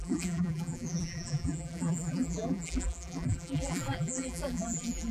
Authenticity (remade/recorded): remade